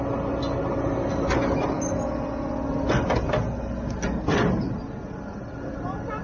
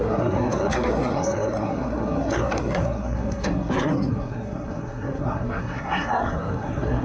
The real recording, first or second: first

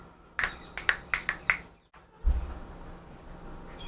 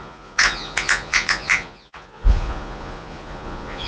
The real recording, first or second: first